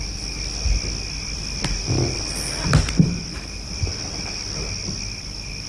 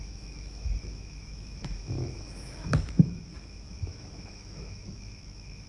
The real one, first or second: first